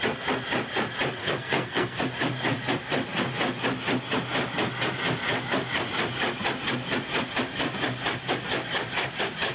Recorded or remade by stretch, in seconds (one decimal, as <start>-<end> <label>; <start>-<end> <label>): 0.0-1.2 recorded; 1.2-2.0 remade; 2.0-9.5 recorded